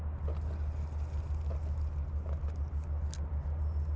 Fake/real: real